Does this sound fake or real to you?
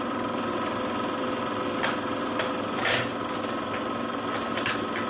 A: real